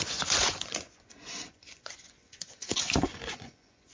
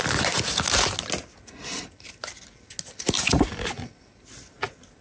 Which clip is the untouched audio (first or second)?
second